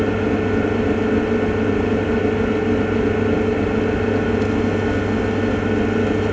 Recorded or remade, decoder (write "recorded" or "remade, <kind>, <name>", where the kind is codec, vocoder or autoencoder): recorded